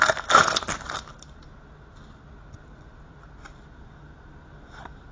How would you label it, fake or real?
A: real